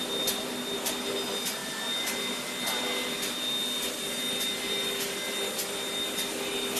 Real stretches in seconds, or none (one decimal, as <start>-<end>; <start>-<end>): 0.0-6.8